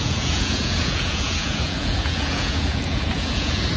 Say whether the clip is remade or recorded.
remade